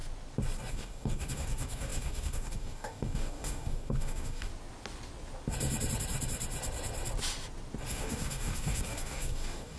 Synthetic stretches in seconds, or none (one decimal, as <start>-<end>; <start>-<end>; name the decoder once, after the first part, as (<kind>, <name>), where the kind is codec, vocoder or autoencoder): 0.7-4.5 (codec, DAC); 7.9-9.8